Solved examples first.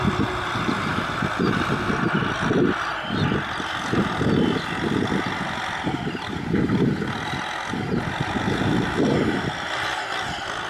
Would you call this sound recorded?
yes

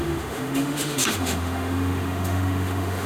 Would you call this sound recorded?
no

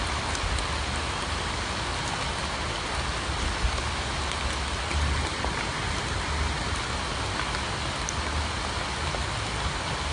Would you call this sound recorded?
yes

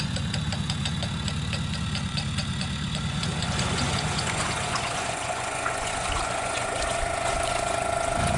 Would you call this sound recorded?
no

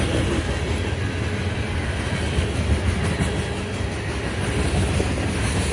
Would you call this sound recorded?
yes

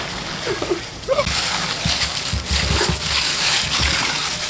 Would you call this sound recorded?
no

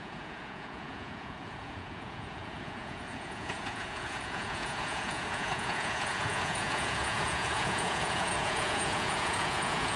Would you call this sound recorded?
no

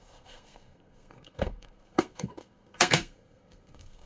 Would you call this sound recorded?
no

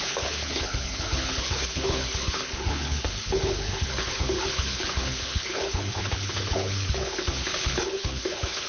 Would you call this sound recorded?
no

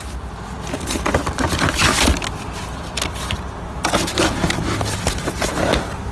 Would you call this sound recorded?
yes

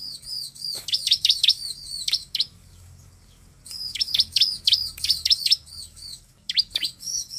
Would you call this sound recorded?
no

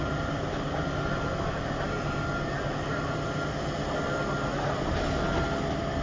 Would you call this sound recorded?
yes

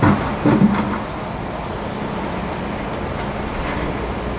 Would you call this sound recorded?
yes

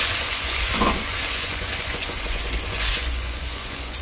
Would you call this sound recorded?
no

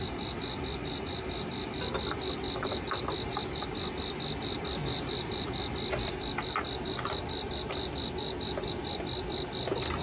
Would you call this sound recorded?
yes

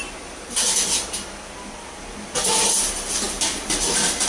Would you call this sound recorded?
yes